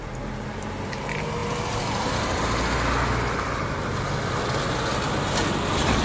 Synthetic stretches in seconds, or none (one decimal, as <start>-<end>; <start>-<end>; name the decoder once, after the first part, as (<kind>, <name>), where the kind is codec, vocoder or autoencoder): none